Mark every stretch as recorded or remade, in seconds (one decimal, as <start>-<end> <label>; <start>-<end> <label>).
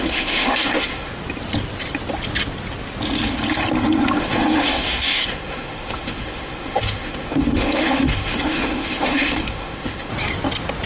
0.0-1.1 remade; 1.1-4.2 recorded; 4.2-10.1 remade; 10.1-10.9 recorded